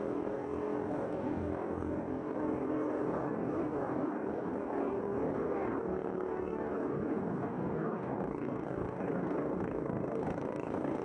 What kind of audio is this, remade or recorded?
remade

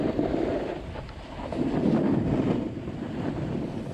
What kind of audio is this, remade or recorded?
recorded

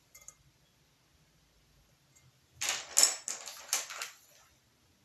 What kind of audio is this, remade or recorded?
recorded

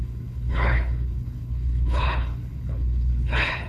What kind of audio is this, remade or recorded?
remade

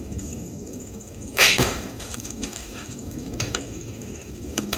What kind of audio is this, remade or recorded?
remade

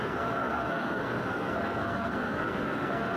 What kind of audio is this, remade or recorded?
remade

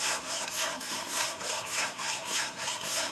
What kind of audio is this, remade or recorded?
remade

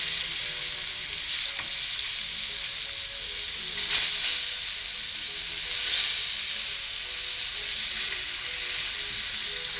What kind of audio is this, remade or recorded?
recorded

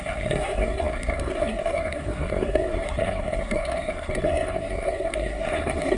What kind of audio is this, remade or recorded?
remade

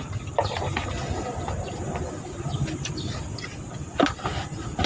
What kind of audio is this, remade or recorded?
recorded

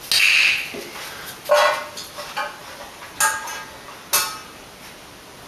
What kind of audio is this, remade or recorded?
recorded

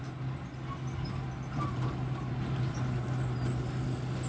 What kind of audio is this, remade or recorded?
recorded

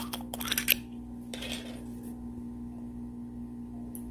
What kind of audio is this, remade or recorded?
recorded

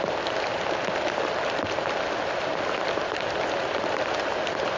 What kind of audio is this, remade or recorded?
recorded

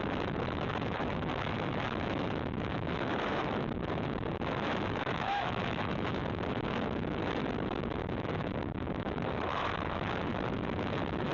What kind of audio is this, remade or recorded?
remade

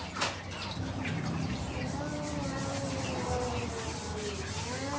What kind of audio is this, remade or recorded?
recorded